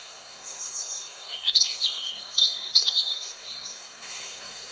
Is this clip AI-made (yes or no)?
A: yes